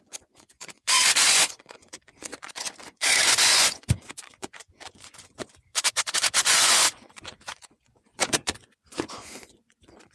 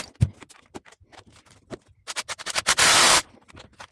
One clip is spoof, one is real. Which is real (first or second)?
second